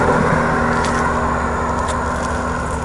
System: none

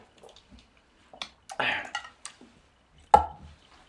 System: none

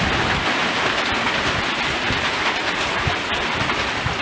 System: vocoder, BigVGAN v2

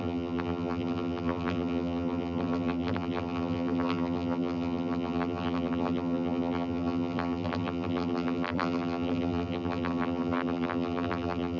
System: vocoder, BigVGAN v2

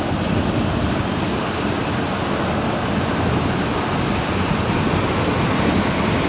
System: none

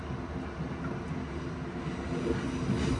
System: none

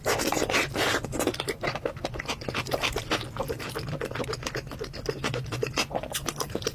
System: none